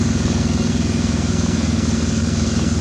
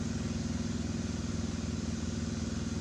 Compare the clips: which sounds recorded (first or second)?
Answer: second